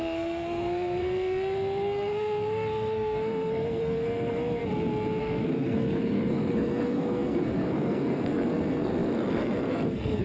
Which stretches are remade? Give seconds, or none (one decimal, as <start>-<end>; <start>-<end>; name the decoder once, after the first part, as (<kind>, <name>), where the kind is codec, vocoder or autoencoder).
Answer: 0.0-4.6 (codec, SNAC); 5.2-10.2